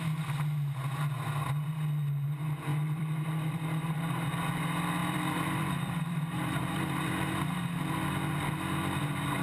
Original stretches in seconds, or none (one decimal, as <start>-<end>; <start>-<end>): 0.0-2.7; 4.0-5.0; 7.6-9.4